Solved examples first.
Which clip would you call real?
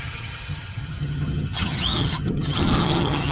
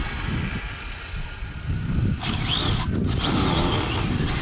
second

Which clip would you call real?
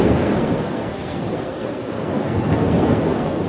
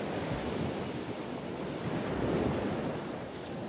second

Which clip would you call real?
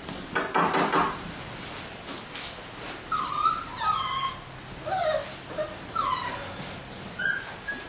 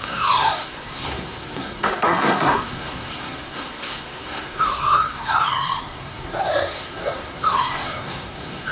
first